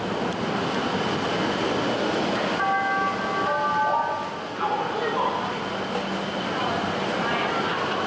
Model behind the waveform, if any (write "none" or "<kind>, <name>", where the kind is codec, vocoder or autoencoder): none